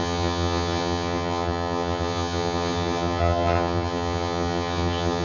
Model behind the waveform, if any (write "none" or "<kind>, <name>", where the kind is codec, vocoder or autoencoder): vocoder, HiFi-GAN